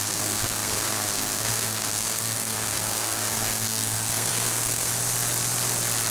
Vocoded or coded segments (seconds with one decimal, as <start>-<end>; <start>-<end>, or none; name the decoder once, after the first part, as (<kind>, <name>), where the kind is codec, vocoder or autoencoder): 0.0-4.9 (codec, SNAC)